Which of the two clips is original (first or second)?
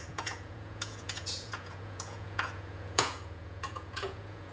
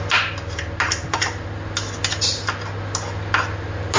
second